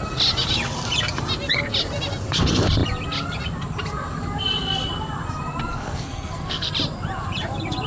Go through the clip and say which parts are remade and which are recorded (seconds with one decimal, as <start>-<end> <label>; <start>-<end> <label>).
0.0-5.7 recorded; 5.7-6.7 remade; 6.7-7.9 recorded